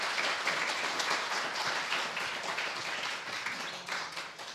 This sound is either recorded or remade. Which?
recorded